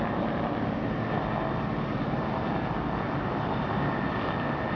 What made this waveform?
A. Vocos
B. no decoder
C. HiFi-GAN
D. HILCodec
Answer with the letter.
B